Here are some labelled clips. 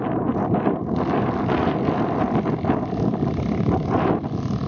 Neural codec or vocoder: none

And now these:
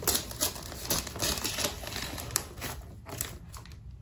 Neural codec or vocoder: none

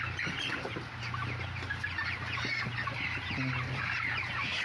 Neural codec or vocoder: none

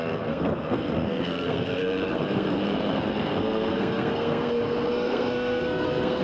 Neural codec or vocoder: codec, SNAC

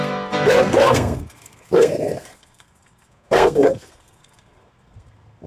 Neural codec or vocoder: codec, SNAC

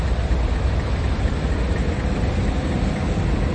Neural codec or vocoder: none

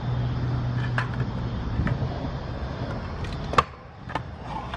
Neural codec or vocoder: none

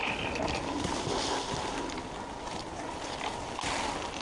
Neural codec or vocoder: none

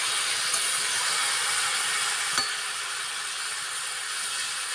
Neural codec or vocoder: none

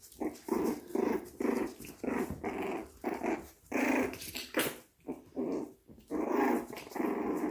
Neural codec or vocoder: none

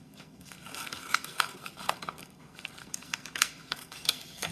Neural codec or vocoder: codec, SNAC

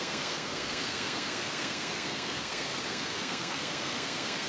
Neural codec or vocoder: codec, SNAC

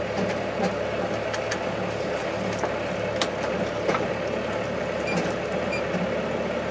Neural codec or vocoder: none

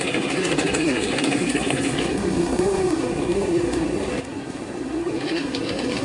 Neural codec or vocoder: codec, SNAC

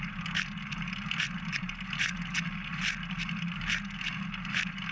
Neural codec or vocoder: none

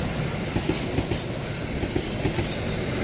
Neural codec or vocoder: none